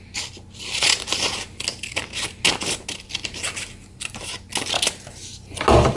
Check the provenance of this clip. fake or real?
real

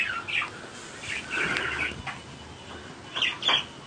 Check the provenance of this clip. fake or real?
real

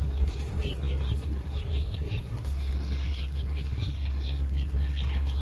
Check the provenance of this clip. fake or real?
fake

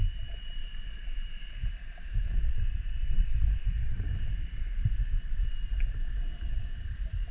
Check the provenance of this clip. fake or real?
fake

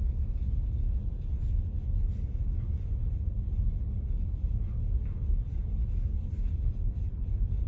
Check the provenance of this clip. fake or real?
real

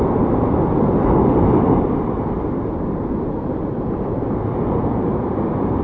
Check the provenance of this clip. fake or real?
real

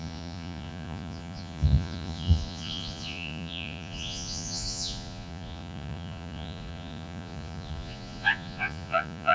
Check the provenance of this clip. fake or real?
fake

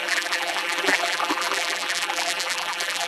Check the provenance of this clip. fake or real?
fake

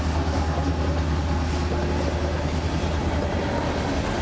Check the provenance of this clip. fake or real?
real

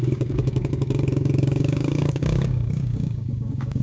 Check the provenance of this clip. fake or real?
fake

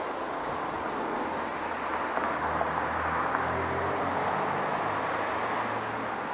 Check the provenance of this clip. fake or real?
real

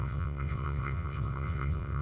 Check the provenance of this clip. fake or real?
fake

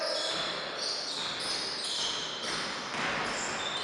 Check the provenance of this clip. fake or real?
real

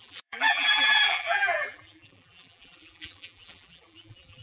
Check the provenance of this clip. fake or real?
fake